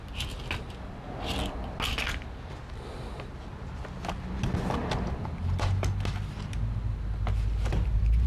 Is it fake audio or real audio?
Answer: real